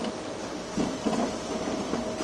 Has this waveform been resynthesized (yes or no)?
no